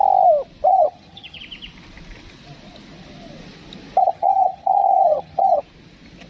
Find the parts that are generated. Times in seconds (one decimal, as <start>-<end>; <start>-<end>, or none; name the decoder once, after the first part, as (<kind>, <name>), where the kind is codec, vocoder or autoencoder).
0.7-1.4 (vocoder, HiFi-GAN); 4.0-5.6